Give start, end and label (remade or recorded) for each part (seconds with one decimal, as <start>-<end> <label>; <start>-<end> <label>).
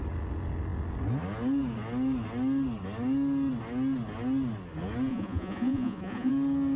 0.0-5.1 recorded; 5.1-6.3 remade; 6.3-6.8 recorded